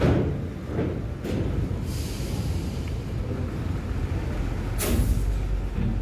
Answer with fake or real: real